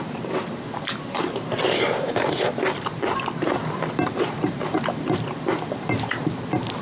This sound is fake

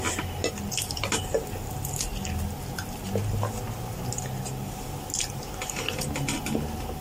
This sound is real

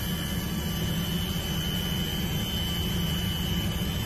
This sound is real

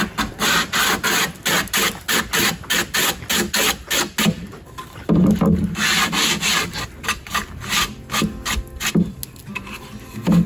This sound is real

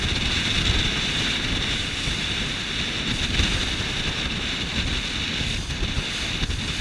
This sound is real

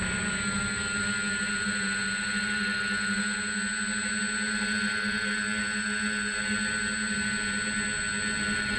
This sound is real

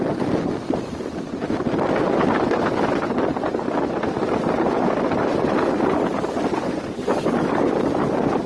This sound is real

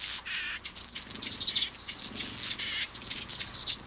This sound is real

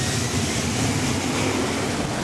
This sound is real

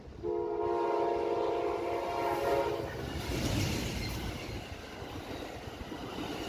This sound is real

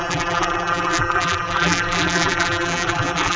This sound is fake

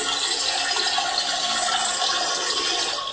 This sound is real